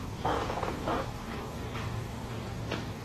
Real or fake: fake